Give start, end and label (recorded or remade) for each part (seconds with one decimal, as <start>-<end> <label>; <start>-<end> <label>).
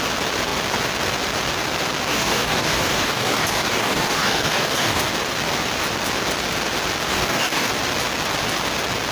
0.0-2.1 recorded; 2.1-5.0 remade; 5.0-7.1 recorded; 7.1-7.7 remade; 7.7-9.1 recorded